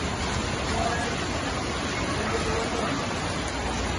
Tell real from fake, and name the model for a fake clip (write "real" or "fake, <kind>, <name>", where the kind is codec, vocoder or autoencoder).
real